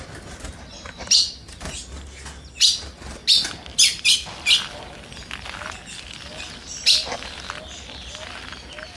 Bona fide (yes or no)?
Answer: yes